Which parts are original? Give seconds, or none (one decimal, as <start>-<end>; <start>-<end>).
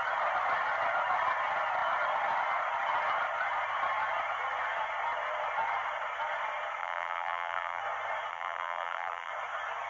0.0-6.8; 7.8-8.3; 9.3-9.9